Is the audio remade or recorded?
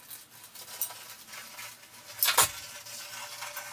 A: recorded